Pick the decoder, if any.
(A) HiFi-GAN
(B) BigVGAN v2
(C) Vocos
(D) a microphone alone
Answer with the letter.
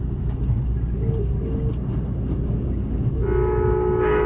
D